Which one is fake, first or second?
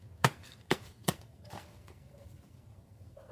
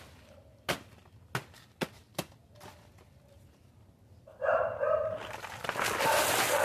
first